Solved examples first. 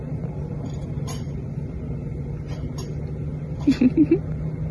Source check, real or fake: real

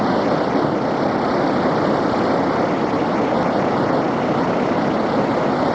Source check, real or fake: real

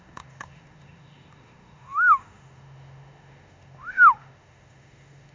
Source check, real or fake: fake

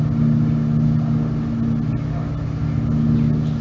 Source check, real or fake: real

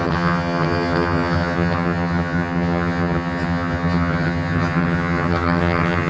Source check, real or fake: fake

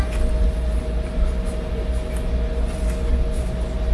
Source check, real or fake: real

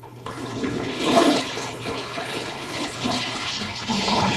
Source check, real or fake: fake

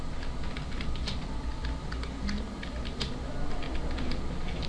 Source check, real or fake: real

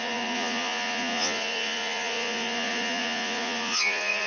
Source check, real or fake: fake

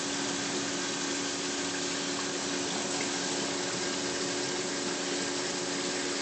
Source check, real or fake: real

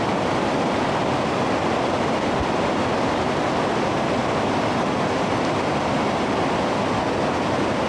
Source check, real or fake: real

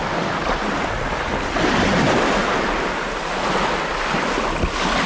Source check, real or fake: real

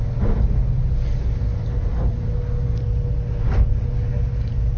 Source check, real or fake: real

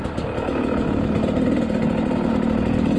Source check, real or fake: real